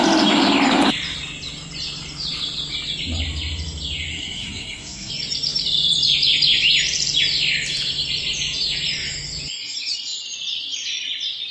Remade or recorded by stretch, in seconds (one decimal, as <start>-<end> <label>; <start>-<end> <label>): 0.0-4.1 recorded; 4.1-5.1 remade; 5.1-11.5 recorded